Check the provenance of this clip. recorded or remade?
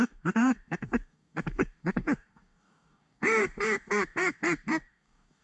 remade